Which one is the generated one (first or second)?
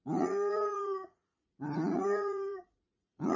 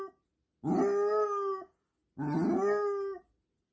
first